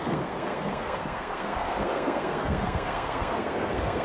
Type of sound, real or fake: fake